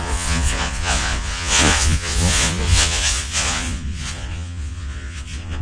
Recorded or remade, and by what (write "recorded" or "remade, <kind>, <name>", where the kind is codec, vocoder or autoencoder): remade, vocoder, Vocos